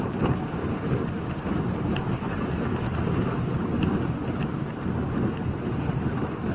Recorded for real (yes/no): yes